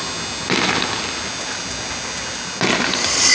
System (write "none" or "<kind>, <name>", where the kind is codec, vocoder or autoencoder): none